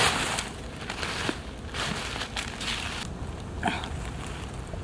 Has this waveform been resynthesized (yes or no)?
no